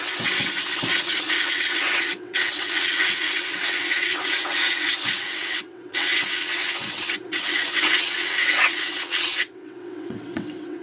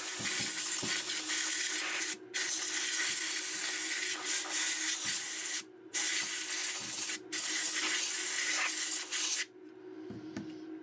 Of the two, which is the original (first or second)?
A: second